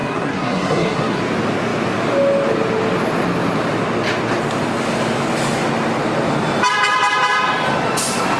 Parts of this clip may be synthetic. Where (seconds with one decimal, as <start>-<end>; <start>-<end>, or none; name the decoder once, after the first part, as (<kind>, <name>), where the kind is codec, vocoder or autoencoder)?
0.0-1.2 (codec, SNAC)